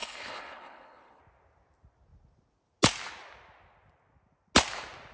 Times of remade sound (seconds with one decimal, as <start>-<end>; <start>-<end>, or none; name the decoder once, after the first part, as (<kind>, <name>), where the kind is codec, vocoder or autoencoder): 0.0-1.2 (codec, HILCodec)